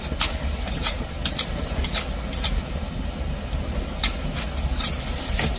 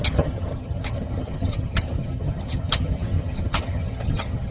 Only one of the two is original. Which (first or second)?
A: first